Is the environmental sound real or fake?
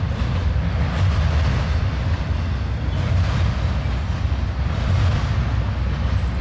real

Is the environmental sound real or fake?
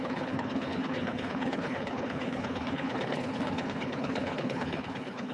fake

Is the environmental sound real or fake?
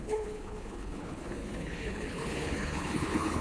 fake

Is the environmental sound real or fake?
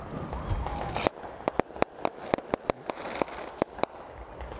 real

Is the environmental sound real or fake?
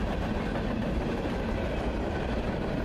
real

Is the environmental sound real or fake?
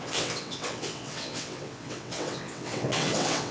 fake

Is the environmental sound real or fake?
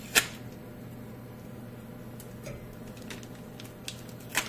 real